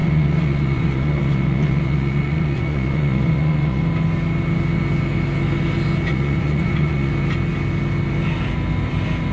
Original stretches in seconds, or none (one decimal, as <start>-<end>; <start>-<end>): 3.8-6.1; 7.1-9.3